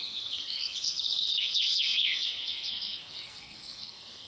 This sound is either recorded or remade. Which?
remade